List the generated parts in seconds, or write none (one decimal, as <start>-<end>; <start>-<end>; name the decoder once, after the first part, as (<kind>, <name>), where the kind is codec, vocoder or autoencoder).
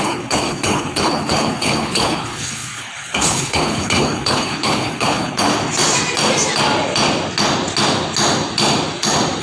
0.0-5.5 (codec, HILCodec)